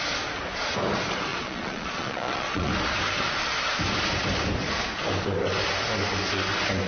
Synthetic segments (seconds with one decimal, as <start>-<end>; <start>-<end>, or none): 1.3-2.7